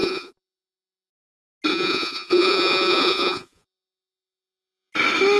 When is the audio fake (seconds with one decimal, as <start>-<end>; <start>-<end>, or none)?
0.0-1.1; 1.7-4.9